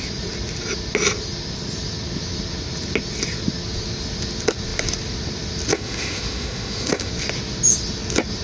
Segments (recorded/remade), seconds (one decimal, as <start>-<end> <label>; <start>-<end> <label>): 0.0-5.7 recorded; 5.7-7.1 remade; 7.1-8.4 recorded

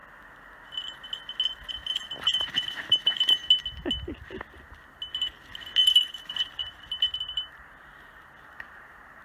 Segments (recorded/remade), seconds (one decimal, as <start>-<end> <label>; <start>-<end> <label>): 0.0-1.7 recorded; 1.7-3.4 remade; 3.4-5.9 recorded; 5.9-9.2 remade

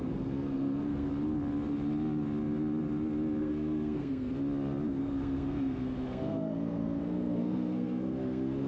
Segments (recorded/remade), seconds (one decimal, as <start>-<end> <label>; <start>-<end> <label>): 0.0-1.1 remade; 1.1-3.4 recorded; 3.4-4.3 remade; 4.3-5.0 recorded; 5.0-8.7 remade

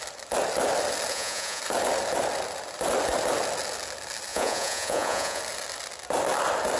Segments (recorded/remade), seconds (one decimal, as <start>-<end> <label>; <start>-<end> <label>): 0.0-1.1 recorded; 1.1-1.6 remade; 1.6-4.3 recorded; 4.3-5.4 remade; 5.4-6.8 recorded

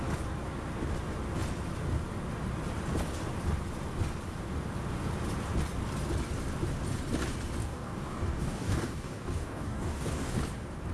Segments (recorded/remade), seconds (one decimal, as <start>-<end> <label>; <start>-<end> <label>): 0.0-7.6 recorded; 7.6-10.4 remade; 10.4-10.9 recorded

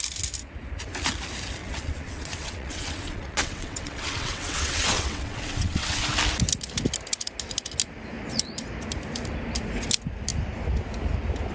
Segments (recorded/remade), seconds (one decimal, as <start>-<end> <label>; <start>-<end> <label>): 0.0-1.6 recorded; 1.6-6.0 remade; 6.0-11.5 recorded

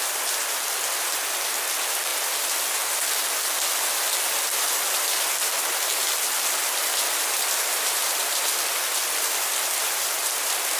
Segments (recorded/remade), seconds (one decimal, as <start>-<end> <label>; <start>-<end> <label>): 0.0-2.1 remade; 2.1-6.6 recorded; 6.6-10.8 remade

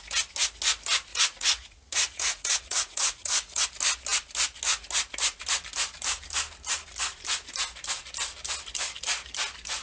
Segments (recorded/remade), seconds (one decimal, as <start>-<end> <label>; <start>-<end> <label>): 0.0-1.1 recorded; 1.1-3.6 remade; 3.6-9.8 recorded